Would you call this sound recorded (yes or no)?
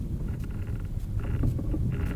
yes